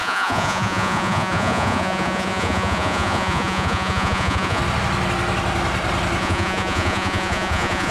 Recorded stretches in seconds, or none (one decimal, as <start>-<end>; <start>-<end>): 4.6-6.2